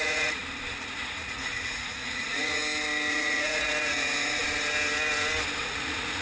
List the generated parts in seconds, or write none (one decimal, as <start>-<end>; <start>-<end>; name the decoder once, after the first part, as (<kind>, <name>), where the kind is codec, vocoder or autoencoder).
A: 0.0-0.4 (vocoder, Vocos); 0.9-2.6; 3.1-4.4; 5.6-6.2